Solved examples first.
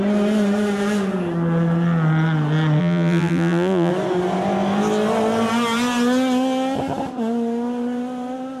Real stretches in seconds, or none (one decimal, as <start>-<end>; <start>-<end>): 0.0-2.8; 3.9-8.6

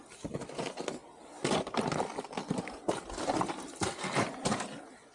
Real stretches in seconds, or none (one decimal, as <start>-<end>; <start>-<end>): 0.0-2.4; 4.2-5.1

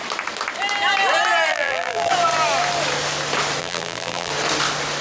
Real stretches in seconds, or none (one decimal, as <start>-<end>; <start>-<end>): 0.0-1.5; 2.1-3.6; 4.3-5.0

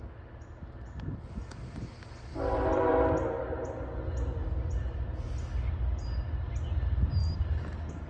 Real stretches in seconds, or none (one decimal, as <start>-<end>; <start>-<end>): 0.0-2.3; 2.9-8.1